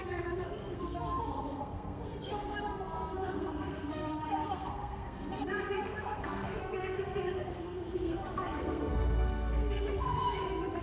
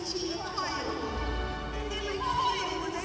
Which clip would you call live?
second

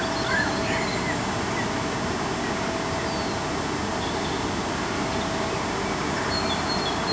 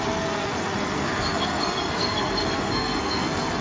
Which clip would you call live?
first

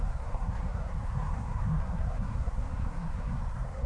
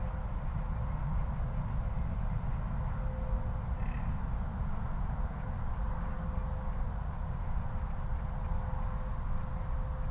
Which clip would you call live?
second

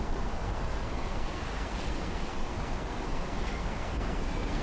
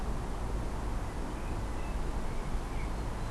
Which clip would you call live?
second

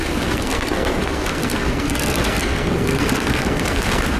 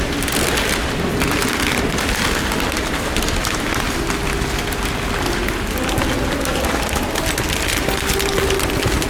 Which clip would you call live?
second